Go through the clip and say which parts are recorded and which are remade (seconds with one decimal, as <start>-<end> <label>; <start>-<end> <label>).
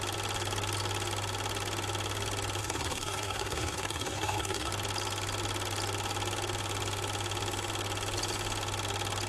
0.0-2.6 recorded; 2.6-4.7 remade; 4.7-9.3 recorded